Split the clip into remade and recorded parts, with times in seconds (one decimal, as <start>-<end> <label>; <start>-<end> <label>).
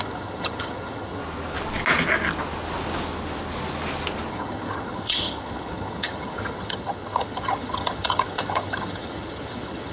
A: 0.0-1.2 remade; 1.2-4.3 recorded; 4.3-9.9 remade